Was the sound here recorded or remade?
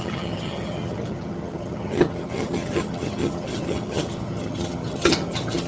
remade